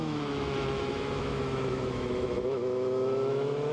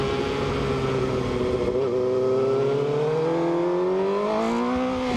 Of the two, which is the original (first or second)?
second